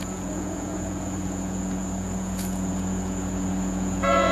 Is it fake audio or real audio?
fake